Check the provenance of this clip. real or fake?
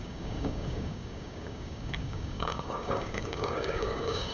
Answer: fake